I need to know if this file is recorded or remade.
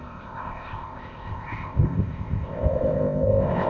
remade